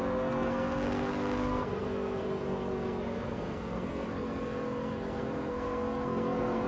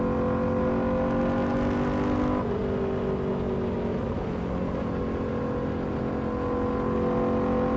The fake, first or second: first